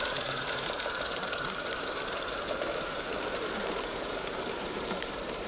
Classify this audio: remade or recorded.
remade